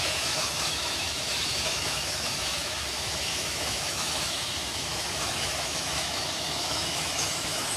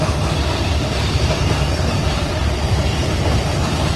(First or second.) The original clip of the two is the second